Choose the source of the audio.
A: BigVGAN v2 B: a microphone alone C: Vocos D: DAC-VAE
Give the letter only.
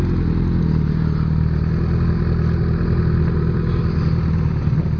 B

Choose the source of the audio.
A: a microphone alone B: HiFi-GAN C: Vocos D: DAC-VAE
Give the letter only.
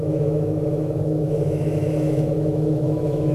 D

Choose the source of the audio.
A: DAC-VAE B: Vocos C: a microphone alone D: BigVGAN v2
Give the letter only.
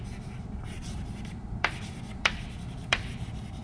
D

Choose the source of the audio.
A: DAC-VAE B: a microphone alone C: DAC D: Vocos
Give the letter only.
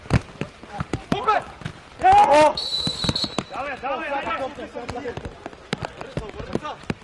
B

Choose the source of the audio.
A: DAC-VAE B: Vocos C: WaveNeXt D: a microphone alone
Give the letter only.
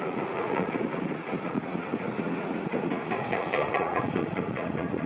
B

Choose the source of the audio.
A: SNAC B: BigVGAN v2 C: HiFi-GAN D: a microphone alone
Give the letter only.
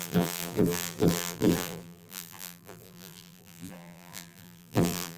B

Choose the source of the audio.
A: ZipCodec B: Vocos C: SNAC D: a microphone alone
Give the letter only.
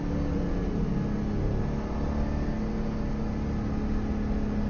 D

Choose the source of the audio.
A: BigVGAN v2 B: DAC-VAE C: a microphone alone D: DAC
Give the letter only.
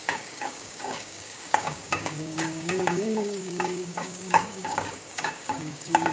D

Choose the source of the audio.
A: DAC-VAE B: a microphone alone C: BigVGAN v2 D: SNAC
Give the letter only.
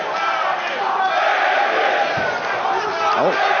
B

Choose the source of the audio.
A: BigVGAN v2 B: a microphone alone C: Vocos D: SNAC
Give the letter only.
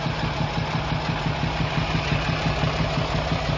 B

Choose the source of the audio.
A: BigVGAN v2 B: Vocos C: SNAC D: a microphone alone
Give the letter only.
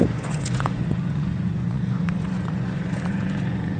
B